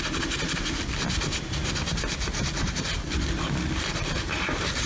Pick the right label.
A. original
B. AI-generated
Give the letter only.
A